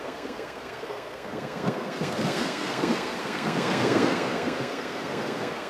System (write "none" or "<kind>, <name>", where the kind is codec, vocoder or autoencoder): codec, SNAC